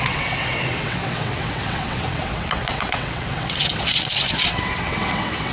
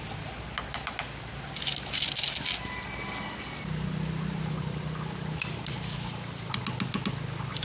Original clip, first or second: second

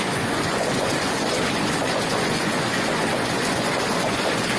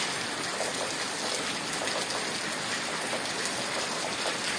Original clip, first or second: second